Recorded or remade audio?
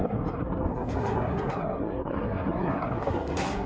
remade